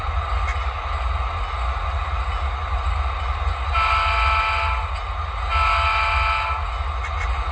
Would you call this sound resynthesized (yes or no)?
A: no